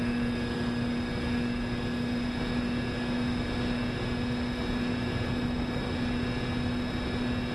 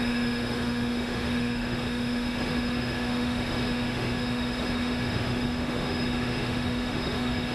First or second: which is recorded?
first